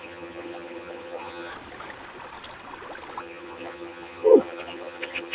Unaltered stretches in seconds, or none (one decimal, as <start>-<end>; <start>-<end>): 1.5-3.2